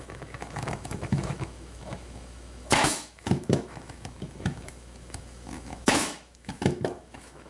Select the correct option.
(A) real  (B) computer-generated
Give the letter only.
B